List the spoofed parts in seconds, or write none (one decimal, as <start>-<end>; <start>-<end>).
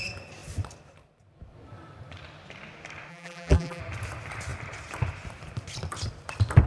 3.1-3.8